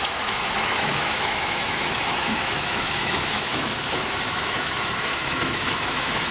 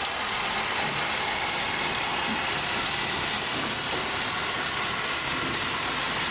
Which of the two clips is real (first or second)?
second